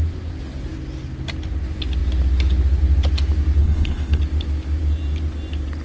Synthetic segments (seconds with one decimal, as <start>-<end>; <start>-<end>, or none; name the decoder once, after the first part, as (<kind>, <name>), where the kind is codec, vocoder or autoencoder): 3.6-4.2 (codec, HILCodec)